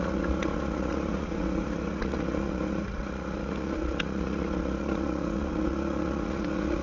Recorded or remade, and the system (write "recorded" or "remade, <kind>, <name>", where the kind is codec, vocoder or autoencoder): remade, vocoder, Vocos